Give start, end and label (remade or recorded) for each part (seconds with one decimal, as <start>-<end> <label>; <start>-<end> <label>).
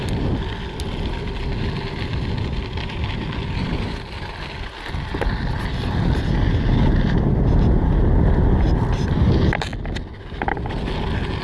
0.0-11.4 recorded